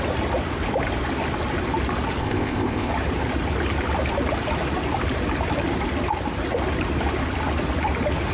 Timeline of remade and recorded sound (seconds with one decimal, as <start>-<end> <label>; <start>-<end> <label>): 0.0-2.2 recorded; 2.2-2.9 remade; 2.9-8.3 recorded